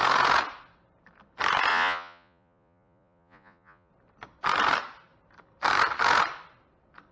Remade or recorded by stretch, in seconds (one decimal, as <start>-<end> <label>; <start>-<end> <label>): 0.0-1.7 recorded; 1.7-3.9 remade; 3.9-7.1 recorded